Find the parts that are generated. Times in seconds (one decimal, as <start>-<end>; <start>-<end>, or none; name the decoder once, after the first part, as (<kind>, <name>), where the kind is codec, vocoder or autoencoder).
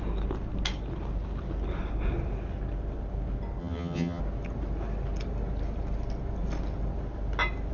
3.6-4.2 (vocoder, HiFi-GAN)